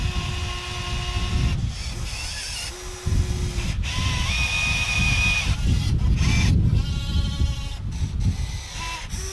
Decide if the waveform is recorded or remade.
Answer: recorded